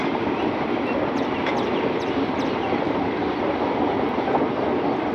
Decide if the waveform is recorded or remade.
recorded